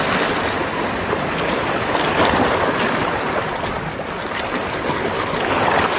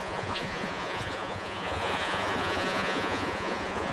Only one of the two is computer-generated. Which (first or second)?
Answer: second